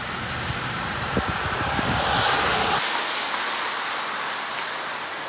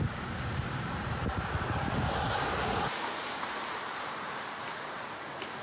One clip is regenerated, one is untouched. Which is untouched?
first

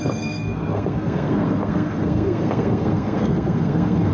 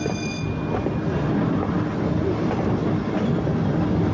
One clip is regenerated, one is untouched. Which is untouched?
second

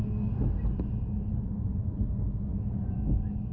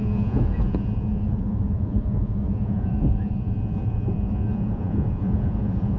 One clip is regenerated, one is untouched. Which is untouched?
first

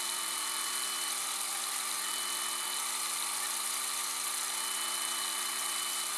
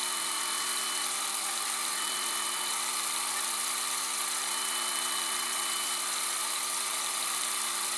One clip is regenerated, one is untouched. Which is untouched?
first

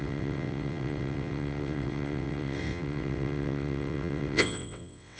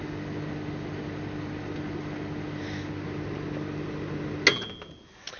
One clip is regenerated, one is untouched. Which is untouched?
second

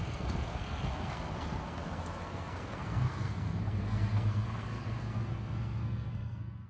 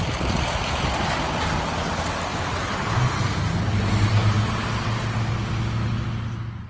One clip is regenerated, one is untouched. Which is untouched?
second